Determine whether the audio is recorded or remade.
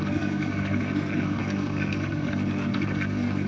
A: remade